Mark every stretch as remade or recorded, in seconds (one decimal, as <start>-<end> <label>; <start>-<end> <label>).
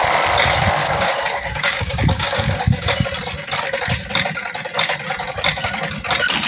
0.0-0.8 recorded; 0.8-2.9 remade; 2.9-6.5 recorded